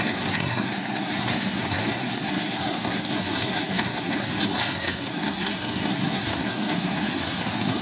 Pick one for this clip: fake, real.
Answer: fake